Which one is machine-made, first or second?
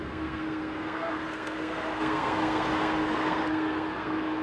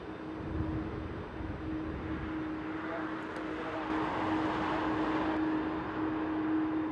first